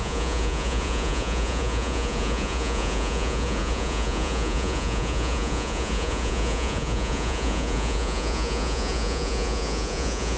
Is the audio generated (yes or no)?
yes